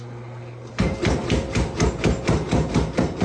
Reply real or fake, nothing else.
real